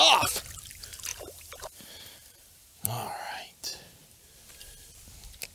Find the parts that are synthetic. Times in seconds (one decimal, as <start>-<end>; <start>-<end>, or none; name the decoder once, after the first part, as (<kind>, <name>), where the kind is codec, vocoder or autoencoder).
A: 1.1-4.4 (vocoder, BigVGAN v2)

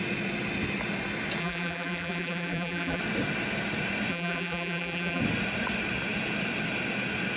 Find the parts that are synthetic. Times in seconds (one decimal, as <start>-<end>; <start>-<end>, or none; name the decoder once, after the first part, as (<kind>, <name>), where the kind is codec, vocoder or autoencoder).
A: 1.4-3.0 (vocoder, BigVGAN v2); 4.1-5.2